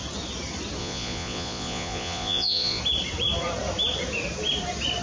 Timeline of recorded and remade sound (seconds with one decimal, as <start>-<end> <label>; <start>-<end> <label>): 0.0-0.8 recorded; 0.8-2.8 remade; 2.8-5.0 recorded